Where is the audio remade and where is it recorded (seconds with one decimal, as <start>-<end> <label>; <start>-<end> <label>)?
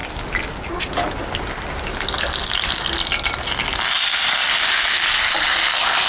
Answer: 0.0-6.1 recorded